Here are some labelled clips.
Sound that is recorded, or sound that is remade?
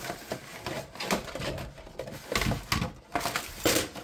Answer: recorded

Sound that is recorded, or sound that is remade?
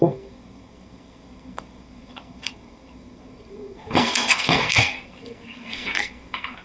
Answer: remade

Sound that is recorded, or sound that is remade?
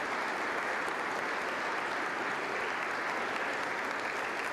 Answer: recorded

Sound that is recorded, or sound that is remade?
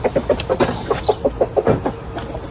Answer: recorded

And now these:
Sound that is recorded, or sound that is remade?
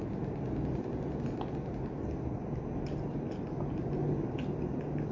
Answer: recorded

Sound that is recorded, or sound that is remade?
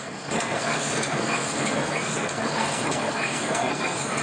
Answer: remade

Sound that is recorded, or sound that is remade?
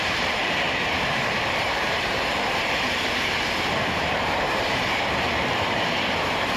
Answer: remade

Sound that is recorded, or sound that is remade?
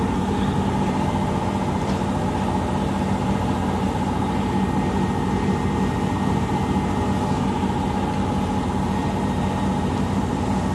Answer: recorded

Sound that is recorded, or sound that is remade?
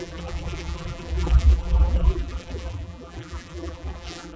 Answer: remade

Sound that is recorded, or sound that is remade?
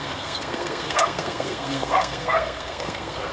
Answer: remade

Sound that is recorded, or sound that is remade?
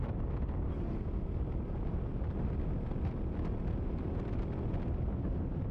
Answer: recorded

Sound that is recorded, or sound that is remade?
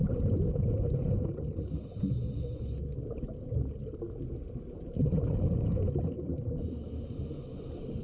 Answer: recorded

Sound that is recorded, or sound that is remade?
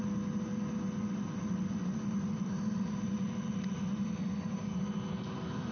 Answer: recorded